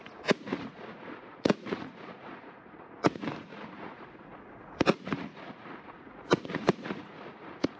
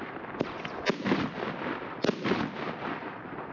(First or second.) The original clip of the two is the second